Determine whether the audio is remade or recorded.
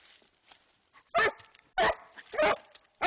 recorded